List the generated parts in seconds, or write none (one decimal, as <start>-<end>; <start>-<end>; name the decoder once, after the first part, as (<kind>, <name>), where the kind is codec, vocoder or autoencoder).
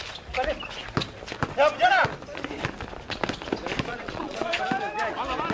3.9-4.5 (vocoder, Vocos)